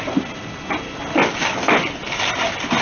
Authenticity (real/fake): real